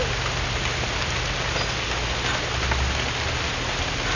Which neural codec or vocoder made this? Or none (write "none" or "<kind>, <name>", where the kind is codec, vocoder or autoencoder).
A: none